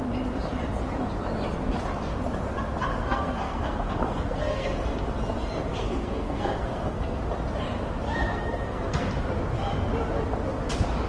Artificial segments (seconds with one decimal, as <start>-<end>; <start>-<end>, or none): 2.9-4.8; 5.7-7.2; 8.3-9.1